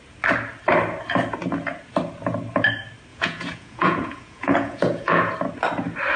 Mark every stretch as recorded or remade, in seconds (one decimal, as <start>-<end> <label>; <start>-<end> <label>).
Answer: 0.0-3.1 recorded; 3.1-5.3 remade; 5.3-6.2 recorded